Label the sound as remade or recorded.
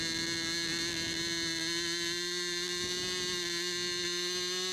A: recorded